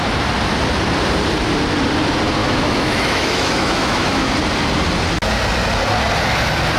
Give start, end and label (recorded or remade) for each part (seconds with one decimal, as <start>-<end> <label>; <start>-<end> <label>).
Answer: 0.0-2.4 recorded; 2.4-4.3 remade; 4.3-6.8 recorded